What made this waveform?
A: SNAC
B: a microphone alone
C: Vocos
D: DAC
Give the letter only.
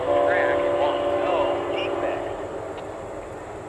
B